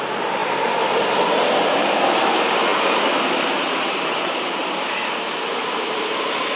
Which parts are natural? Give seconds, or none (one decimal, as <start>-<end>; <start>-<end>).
0.4-1.4